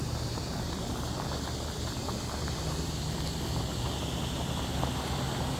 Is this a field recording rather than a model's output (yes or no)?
yes